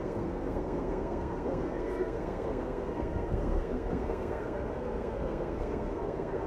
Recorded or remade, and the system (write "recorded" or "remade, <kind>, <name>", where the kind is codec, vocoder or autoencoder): remade, codec, SNAC